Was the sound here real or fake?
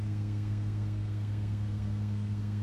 fake